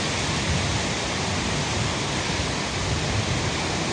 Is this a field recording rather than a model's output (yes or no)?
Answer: yes